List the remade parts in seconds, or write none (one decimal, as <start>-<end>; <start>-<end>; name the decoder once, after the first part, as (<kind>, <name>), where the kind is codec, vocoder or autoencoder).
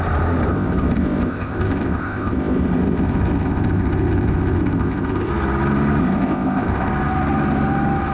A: 0.5-5.3 (codec, ZipCodec); 6.0-6.9